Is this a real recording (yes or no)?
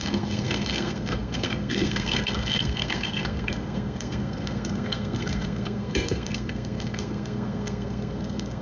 no